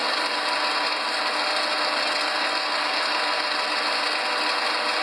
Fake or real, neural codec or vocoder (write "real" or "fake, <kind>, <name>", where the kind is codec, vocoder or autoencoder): real